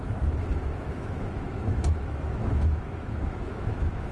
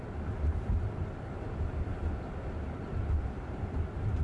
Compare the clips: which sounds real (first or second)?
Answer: second